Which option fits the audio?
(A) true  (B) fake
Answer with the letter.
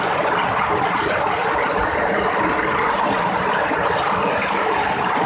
A